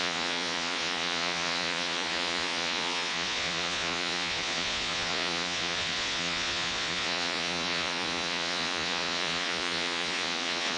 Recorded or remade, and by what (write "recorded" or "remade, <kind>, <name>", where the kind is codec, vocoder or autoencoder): remade, vocoder, Vocos